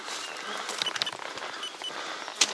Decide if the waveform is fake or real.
real